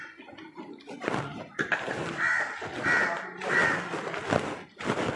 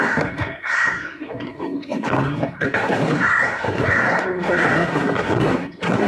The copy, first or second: second